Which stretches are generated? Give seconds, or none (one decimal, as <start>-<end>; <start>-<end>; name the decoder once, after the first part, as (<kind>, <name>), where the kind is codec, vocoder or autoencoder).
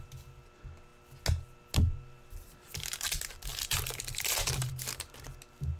3.5-4.7 (vocoder, BigVGAN v2)